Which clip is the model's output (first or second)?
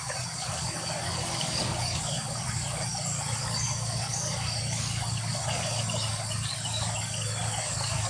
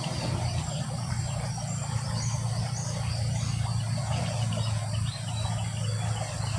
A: first